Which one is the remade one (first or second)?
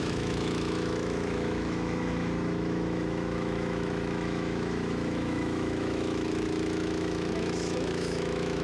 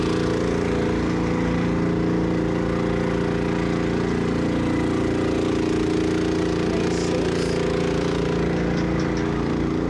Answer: first